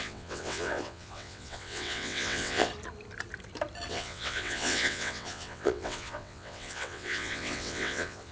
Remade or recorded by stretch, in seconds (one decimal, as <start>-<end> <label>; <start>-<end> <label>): 0.0-2.7 remade; 2.7-3.9 recorded; 3.9-8.3 remade